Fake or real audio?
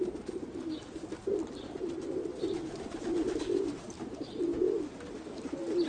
real